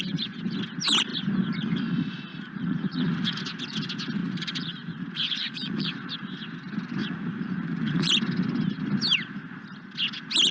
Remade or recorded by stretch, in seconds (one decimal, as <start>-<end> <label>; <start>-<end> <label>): 0.0-2.3 recorded; 2.3-3.4 remade; 3.4-4.2 recorded; 4.2-6.1 remade; 6.1-7.0 recorded; 7.0-8.1 remade; 8.1-10.5 recorded